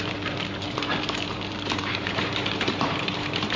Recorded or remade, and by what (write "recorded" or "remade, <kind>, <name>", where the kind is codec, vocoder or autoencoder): remade, vocoder, BigVGAN v2